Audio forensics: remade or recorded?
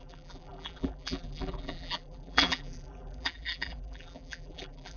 remade